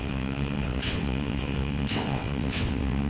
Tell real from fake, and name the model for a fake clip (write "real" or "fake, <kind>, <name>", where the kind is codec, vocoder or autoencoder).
fake, vocoder, WaveNeXt